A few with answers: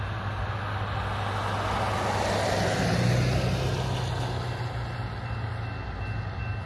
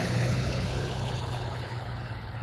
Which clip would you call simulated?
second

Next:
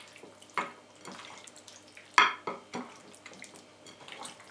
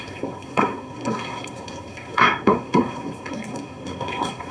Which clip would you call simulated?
second